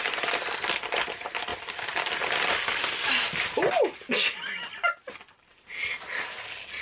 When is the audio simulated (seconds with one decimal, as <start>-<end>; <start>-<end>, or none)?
none